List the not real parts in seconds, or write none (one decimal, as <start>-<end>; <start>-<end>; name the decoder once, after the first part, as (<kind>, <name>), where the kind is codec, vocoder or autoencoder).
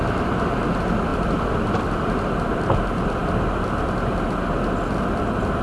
none